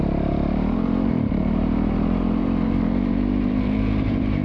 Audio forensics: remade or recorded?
remade